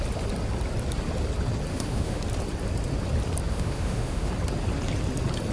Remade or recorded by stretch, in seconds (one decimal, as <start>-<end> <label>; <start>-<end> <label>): 0.0-1.7 recorded; 1.7-2.2 remade; 2.2-3.5 recorded; 3.5-4.3 remade; 4.3-5.5 recorded